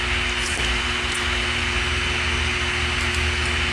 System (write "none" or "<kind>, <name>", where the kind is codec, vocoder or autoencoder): none